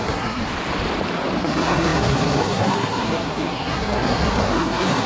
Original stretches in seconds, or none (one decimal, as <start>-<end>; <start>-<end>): 0.4-1.4